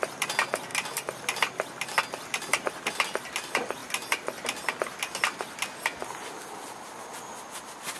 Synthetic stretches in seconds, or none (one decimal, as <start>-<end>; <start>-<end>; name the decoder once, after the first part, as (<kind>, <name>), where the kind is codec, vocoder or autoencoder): none